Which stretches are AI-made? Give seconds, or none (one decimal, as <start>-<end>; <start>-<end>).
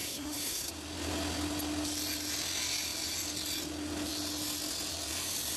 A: 0.0-0.7